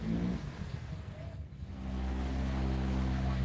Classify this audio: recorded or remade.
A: remade